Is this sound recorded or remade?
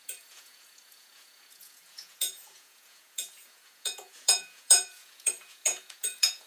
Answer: remade